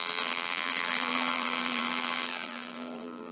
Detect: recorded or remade remade